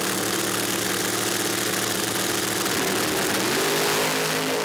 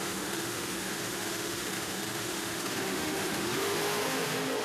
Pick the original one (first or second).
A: first